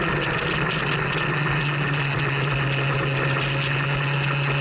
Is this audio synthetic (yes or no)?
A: no